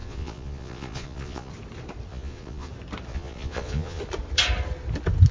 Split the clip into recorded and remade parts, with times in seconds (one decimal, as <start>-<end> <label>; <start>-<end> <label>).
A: 0.0-1.5 remade; 1.5-2.1 recorded; 2.1-2.7 remade; 2.7-3.1 recorded; 3.1-4.0 remade; 4.0-5.3 recorded